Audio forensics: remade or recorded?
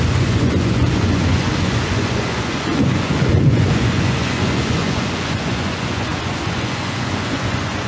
remade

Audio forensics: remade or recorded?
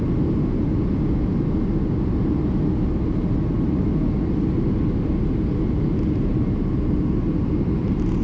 recorded